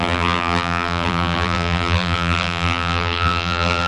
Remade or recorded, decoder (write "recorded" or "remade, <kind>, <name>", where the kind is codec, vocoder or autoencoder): remade, vocoder, BigVGAN v2